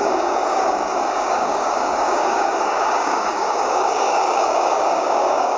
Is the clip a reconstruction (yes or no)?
yes